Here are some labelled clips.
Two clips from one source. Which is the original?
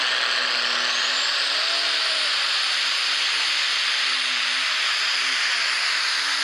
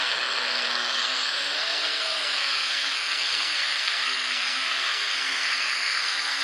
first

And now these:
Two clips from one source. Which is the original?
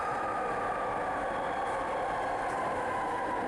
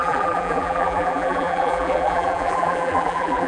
first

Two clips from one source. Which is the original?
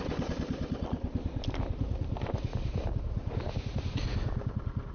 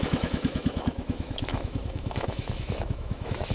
first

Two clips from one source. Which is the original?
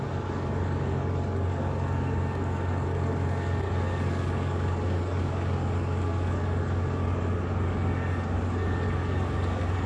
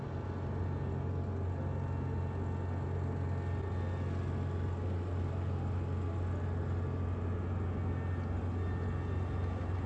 second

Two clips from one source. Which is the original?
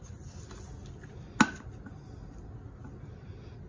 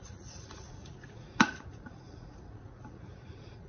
first